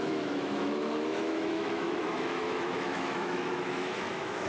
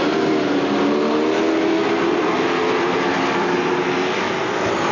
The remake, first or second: first